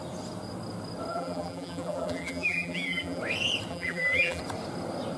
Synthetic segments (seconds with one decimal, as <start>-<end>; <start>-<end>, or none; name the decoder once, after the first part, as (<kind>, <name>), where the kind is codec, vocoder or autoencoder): 1.1-3.2 (vocoder, BigVGAN v2); 3.7-4.4